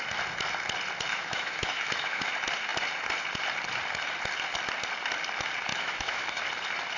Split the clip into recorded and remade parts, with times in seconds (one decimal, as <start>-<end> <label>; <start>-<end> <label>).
0.0-1.1 recorded; 1.1-2.3 remade; 2.3-5.7 recorded; 5.7-6.4 remade; 6.4-7.0 recorded